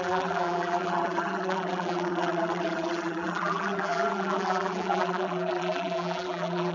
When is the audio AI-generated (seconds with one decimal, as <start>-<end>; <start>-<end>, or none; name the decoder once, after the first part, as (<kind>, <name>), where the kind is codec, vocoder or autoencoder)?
0.0-6.7 (vocoder, BigVGAN v2)